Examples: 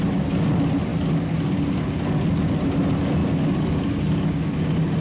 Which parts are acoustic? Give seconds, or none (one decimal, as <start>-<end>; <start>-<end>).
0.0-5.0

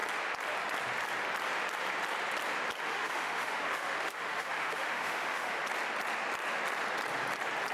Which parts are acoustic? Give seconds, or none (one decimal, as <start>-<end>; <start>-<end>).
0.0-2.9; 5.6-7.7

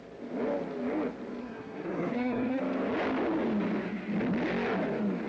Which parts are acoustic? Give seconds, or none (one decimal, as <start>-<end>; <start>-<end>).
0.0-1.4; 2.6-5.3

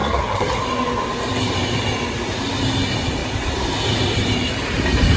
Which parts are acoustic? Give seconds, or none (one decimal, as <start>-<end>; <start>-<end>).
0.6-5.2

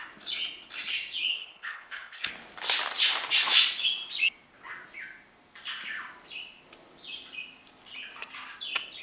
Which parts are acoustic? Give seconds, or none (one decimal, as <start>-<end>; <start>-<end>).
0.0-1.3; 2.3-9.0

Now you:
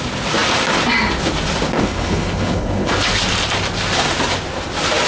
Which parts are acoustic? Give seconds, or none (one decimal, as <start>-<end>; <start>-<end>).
0.0-1.8; 3.1-5.1